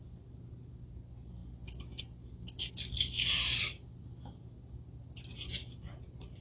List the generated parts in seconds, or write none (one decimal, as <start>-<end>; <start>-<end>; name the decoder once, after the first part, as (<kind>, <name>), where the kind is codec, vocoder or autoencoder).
none